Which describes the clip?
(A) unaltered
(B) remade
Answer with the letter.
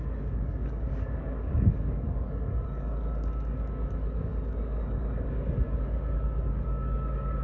B